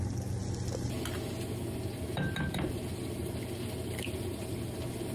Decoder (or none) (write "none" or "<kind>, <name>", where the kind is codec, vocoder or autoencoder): none